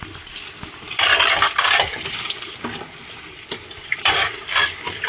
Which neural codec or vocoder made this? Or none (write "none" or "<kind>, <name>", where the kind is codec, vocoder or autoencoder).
vocoder, BigVGAN v2